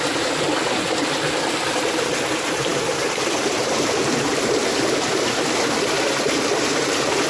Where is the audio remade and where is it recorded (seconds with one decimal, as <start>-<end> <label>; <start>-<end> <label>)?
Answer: 0.0-7.3 recorded